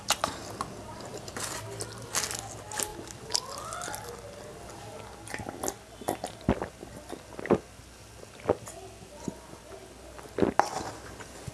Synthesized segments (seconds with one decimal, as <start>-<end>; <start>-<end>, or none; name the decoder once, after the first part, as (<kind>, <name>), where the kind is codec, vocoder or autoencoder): none